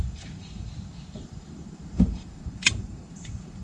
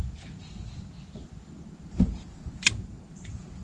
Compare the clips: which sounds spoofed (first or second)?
first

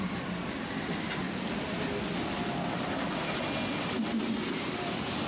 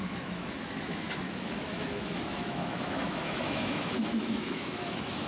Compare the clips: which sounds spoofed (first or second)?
second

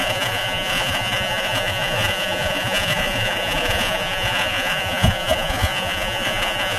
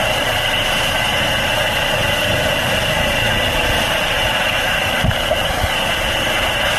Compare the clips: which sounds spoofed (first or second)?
first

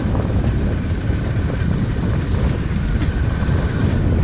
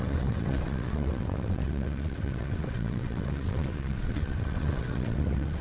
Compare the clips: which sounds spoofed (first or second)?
second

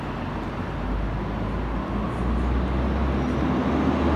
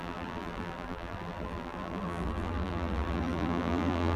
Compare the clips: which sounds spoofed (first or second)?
second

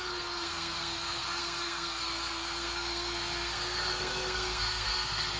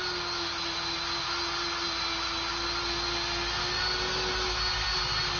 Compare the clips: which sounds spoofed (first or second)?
first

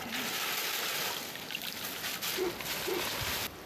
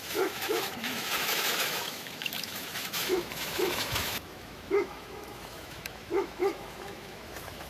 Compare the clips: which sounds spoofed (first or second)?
second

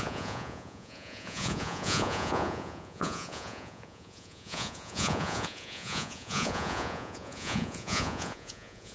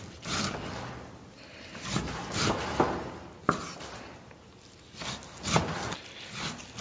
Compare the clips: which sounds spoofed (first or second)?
first